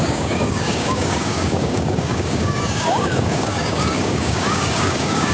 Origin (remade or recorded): remade